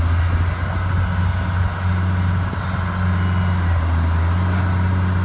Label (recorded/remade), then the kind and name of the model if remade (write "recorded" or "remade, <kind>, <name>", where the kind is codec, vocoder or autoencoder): recorded